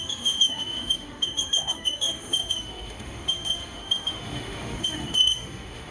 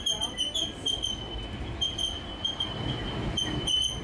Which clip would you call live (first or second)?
second